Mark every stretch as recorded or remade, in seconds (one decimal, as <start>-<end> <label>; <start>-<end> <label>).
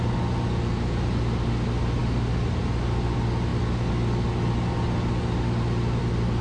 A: 0.0-6.4 recorded